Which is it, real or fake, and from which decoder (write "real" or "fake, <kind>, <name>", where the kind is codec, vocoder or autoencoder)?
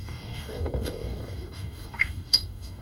fake, codec, DAC